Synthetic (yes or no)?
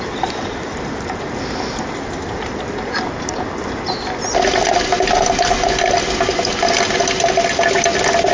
no